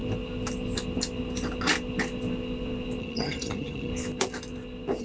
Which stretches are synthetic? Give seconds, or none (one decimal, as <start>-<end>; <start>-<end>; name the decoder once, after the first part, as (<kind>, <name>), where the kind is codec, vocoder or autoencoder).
3.0-3.9 (vocoder, HiFi-GAN)